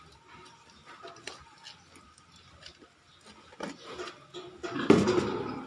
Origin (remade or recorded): recorded